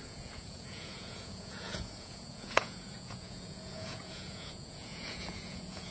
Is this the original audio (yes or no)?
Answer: no